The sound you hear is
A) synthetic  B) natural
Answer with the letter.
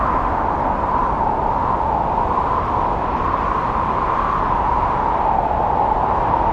B